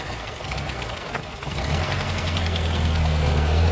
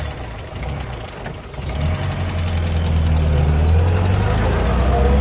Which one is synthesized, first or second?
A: first